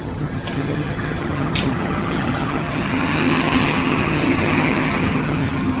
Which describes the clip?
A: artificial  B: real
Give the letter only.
A